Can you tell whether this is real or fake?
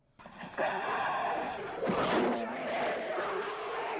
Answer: real